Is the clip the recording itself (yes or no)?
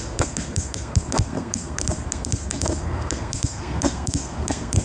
no